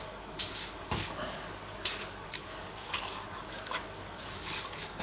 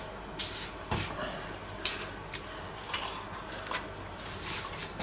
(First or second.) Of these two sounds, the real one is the second